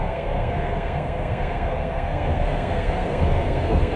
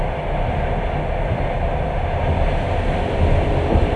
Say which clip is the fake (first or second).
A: first